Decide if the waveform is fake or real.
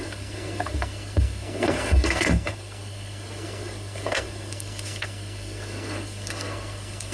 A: fake